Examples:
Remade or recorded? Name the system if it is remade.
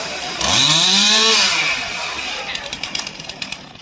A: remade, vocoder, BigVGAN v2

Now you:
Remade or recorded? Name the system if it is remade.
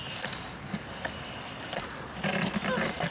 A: recorded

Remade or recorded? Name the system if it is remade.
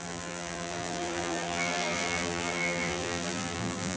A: remade, vocoder, BigVGAN v2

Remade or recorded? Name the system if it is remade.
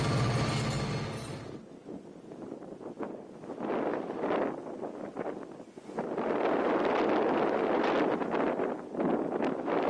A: recorded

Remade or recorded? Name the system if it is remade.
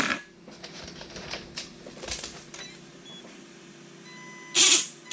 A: recorded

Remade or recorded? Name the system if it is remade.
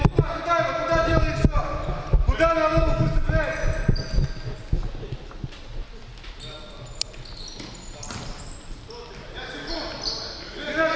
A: recorded